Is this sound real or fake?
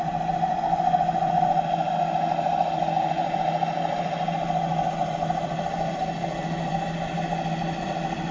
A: real